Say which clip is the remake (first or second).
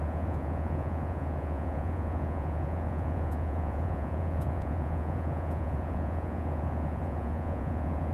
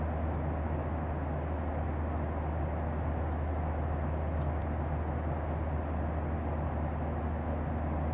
first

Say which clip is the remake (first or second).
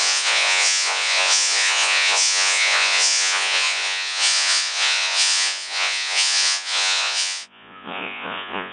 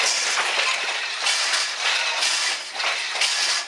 first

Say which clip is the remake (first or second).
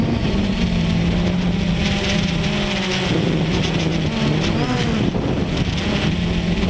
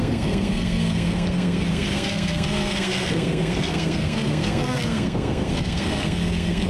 second